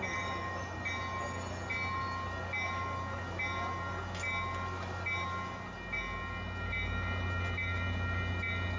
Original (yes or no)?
yes